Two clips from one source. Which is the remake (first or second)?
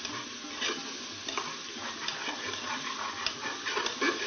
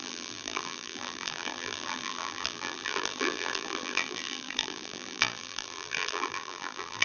second